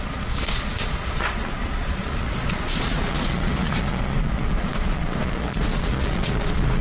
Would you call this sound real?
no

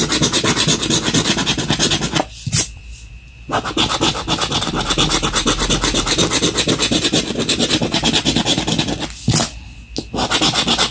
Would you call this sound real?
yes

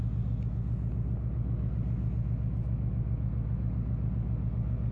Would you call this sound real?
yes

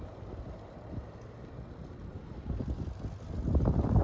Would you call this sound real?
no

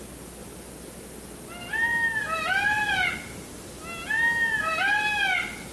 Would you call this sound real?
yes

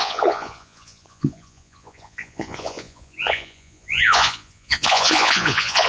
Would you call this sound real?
no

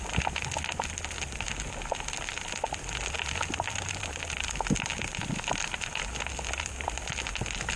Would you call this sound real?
yes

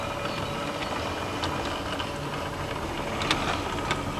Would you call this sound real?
yes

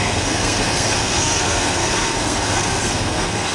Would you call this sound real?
no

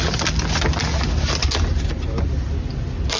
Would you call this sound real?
yes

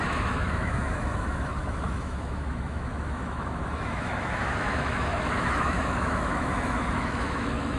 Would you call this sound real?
no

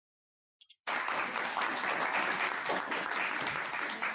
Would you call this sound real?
no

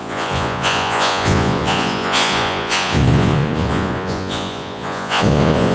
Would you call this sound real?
no